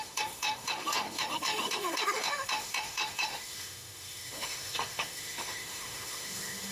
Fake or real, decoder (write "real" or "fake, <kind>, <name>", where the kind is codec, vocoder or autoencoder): fake, autoencoder, DAC-VAE